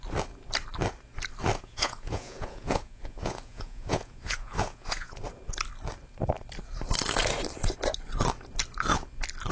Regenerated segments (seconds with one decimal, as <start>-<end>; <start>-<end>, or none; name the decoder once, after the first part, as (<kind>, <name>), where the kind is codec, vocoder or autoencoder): 1.6-5.2 (vocoder, Vocos)